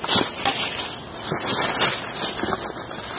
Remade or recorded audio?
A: recorded